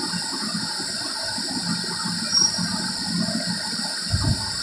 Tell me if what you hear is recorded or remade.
recorded